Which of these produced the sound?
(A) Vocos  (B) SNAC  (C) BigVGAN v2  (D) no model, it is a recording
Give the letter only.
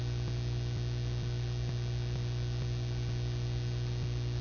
D